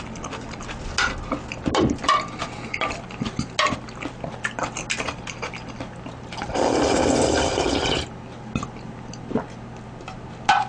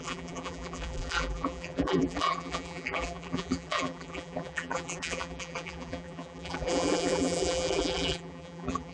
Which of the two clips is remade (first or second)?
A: second